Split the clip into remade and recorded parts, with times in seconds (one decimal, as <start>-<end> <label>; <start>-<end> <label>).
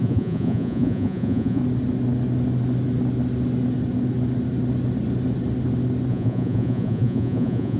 0.0-1.6 remade; 1.6-6.1 recorded; 6.1-7.8 remade